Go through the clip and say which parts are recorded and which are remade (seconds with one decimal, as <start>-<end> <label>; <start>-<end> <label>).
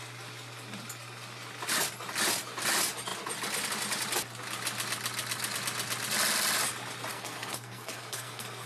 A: 0.0-7.1 recorded; 7.1-8.7 remade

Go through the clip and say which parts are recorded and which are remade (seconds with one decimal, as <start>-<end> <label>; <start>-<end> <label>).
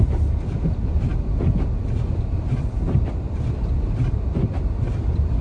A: 0.0-5.4 recorded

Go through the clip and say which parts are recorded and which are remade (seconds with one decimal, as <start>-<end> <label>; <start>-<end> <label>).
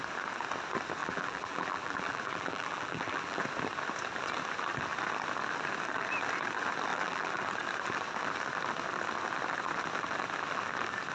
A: 0.0-1.0 recorded; 1.0-3.4 remade; 3.4-6.9 recorded; 6.9-7.4 remade; 7.4-11.1 recorded